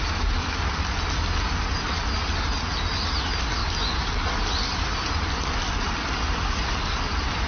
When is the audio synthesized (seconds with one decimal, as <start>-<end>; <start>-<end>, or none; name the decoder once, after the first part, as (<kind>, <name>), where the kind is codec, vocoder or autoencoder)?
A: none